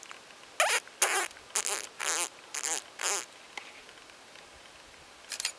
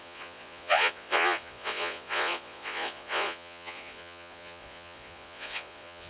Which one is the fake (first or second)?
second